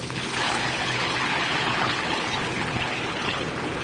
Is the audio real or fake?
fake